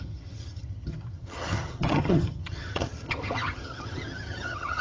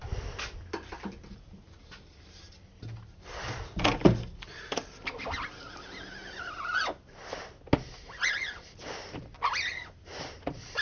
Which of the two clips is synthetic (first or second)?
first